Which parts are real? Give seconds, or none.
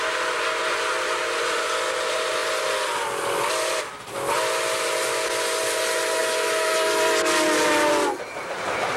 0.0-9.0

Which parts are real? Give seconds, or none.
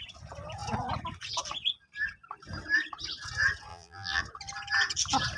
0.0-3.7; 4.2-5.4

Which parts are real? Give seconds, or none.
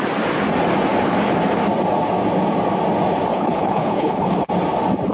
0.0-3.3; 4.5-5.1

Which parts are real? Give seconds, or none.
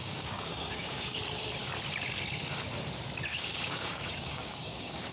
1.2-3.3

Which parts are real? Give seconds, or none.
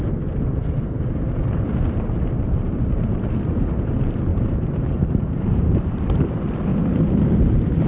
6.7-7.2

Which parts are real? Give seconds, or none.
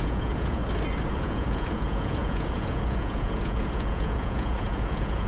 0.6-1.1